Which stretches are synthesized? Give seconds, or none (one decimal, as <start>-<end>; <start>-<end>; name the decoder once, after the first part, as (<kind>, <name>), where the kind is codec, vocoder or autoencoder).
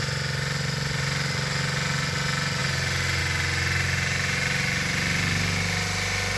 none